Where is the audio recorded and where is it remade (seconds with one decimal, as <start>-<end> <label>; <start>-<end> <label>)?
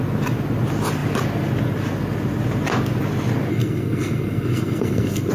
0.0-3.5 recorded; 3.5-5.3 remade